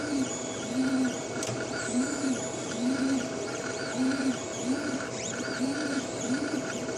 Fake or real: fake